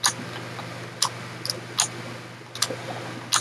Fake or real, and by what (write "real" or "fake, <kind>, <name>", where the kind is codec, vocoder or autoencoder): real